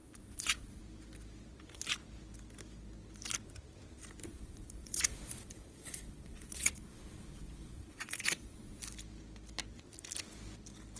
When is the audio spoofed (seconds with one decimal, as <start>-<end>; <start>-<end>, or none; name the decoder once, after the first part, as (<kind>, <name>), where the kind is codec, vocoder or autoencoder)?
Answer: 0.0-0.8 (vocoder, Vocos); 4.2-8.8